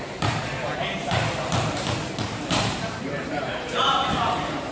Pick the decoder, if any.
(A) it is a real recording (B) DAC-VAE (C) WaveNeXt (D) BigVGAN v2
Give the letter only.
D